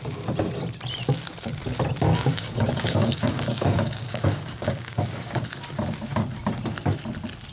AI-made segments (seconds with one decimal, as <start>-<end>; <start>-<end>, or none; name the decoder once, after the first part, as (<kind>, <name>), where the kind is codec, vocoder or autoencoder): 2.1-5.5 (codec, DAC)